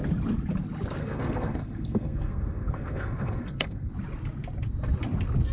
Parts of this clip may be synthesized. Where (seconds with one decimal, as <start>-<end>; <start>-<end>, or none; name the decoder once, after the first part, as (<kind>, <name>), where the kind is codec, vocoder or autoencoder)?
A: 1.0-3.9 (codec, SNAC)